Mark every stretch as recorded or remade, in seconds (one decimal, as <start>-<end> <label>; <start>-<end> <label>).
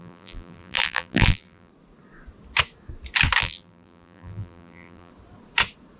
0.0-1.7 remade; 1.7-3.4 recorded; 3.4-5.1 remade; 5.1-6.0 recorded